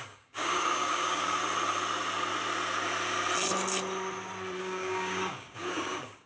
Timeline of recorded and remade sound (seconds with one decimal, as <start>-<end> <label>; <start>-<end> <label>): 0.0-1.4 remade; 1.4-4.6 recorded; 4.6-6.3 remade